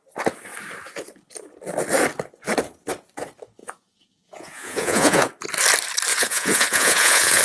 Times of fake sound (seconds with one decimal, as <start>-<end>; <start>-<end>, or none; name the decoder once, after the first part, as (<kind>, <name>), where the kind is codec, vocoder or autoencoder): 3.6-5.3 (vocoder, Vocos); 6.1-7.4